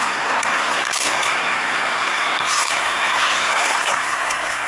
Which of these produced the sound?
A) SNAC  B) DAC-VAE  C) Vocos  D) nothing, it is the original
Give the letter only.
A